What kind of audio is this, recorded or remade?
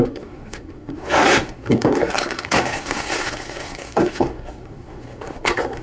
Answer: remade